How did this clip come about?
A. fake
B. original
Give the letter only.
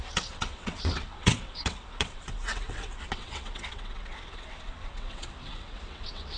A